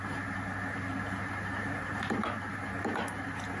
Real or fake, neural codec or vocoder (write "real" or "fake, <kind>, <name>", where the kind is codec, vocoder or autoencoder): real